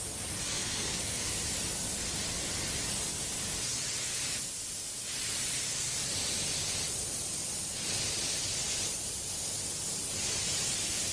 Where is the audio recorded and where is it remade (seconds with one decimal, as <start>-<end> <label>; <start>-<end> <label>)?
0.0-0.4 recorded; 0.4-1.3 remade; 1.3-11.1 recorded